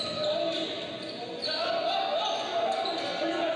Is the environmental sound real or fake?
real